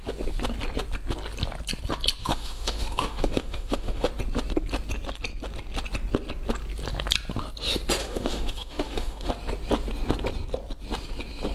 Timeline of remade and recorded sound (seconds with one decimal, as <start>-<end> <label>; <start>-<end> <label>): 0.0-2.2 recorded; 2.2-4.1 remade; 4.1-8.0 recorded; 8.0-9.3 remade; 9.3-11.5 recorded